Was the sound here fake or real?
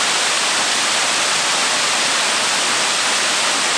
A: real